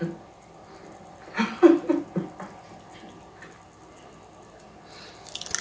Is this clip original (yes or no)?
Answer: yes